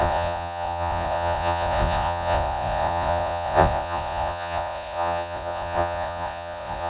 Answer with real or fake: fake